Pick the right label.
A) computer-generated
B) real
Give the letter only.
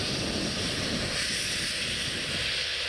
B